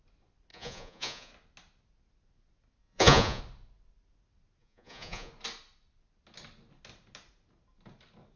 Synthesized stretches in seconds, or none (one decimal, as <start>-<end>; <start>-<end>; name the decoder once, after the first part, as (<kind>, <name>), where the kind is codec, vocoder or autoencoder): 0.5-1.3 (vocoder, Vocos); 2.8-3.4; 4.6-5.3

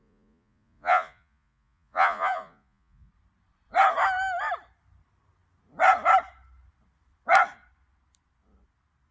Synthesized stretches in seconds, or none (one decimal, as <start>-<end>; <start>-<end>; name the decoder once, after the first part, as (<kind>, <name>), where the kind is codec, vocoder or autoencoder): 0.0-3.1 (vocoder, Vocos)

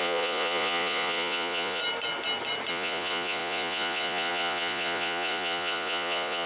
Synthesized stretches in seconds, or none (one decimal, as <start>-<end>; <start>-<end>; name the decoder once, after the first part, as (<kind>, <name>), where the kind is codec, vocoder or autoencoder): 0.0-1.8 (vocoder, Vocos); 2.7-6.5

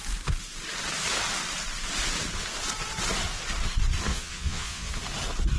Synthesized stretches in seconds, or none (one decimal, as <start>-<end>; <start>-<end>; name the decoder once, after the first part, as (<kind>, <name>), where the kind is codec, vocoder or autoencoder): 4.1-4.9 (vocoder, Vocos)

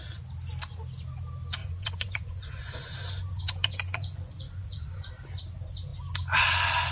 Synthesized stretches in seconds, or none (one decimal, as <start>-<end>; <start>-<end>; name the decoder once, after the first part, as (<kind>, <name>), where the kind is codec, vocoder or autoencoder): 1.6-5.1 (vocoder, Vocos)

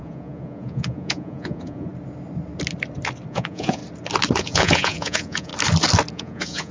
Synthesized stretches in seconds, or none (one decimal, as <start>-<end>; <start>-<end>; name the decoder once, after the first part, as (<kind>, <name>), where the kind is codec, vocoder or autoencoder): 0.0-1.9 (vocoder, Vocos); 3.3-3.8; 4.4-5.5; 6.1-6.7

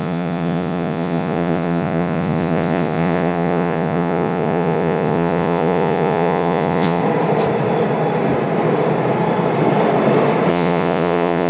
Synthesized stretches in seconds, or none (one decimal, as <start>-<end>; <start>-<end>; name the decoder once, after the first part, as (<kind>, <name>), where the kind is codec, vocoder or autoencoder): 0.0-7.0 (vocoder, Vocos); 10.5-11.5